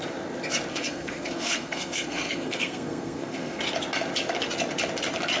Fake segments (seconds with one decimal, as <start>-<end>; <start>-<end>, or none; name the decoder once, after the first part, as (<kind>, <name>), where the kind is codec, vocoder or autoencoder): 0.7-3.6 (codec, SNAC)